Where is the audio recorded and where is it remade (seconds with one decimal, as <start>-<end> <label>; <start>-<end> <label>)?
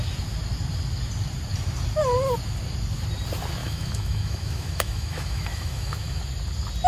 0.0-3.6 recorded; 3.6-6.2 remade; 6.2-6.9 recorded